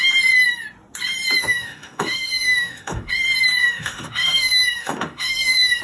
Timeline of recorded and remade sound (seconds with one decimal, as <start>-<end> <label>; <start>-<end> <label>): 0.0-1.4 recorded; 1.4-3.1 remade; 3.1-3.6 recorded; 3.6-5.8 remade